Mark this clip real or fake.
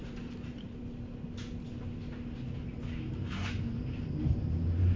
real